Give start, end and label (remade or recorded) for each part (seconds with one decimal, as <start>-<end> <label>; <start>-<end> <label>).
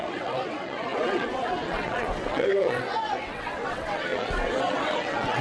0.0-5.4 remade